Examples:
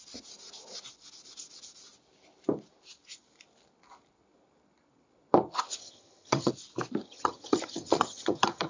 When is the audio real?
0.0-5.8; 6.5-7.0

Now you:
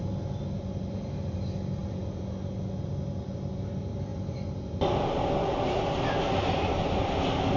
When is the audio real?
0.0-7.6

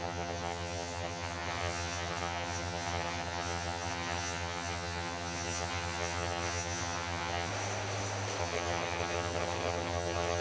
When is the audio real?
7.5-8.4

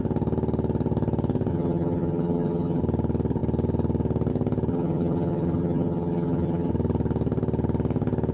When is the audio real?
0.0-1.5; 2.8-4.7; 6.7-8.3

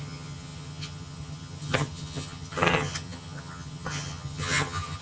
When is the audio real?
none